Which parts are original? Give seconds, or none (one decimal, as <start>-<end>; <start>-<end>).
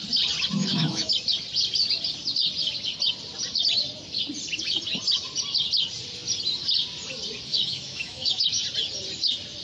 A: 0.0-0.6; 1.1-7.5; 8.6-9.6